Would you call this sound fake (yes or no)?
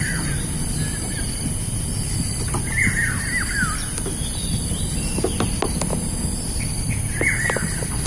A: no